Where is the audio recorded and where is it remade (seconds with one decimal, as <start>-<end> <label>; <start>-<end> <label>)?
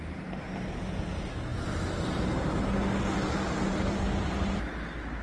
0.0-5.2 recorded